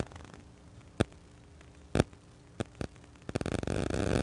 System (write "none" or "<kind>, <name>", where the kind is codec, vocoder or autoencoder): none